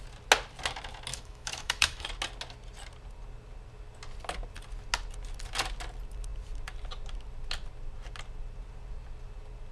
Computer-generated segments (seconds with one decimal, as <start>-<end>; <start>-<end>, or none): 1.1-2.1